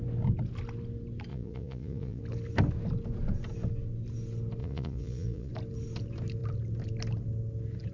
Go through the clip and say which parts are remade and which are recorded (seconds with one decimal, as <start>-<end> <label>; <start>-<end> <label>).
0.0-1.3 recorded; 1.3-2.2 remade; 2.2-4.6 recorded; 4.6-5.5 remade; 5.5-7.9 recorded